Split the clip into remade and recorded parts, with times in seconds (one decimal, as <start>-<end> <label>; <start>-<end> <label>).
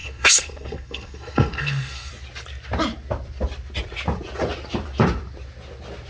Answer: 0.0-2.1 remade; 2.1-6.1 recorded